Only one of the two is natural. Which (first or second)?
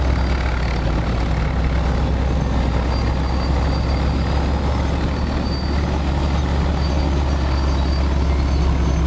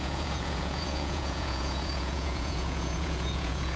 first